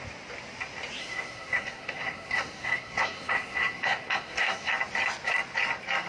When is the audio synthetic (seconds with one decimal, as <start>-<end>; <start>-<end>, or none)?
1.0-4.7